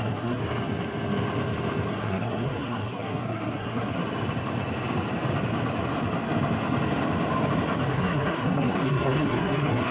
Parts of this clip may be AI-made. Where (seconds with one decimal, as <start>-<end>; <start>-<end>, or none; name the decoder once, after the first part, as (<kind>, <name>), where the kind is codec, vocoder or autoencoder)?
0.0-0.4 (codec, SNAC); 1.9-4.0; 7.9-9.9